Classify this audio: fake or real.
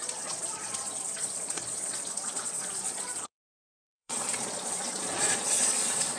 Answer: fake